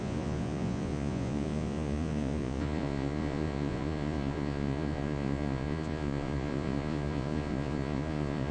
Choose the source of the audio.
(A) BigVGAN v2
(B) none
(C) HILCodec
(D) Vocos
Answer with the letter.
D